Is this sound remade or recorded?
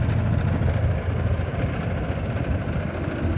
recorded